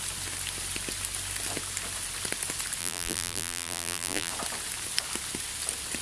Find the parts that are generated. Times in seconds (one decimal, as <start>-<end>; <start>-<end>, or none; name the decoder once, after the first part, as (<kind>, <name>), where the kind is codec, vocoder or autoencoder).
2.8-4.3 (vocoder, BigVGAN v2)